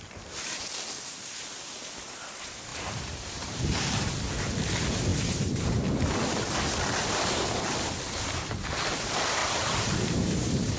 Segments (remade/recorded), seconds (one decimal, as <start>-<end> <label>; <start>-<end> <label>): 0.0-2.7 recorded; 2.7-4.1 remade; 4.1-9.4 recorded; 9.4-10.8 remade